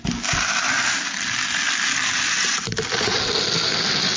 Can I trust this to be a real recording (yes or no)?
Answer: yes